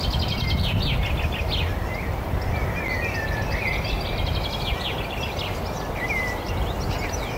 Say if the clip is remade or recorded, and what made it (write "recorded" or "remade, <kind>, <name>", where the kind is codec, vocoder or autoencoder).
recorded